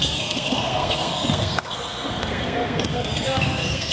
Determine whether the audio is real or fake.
fake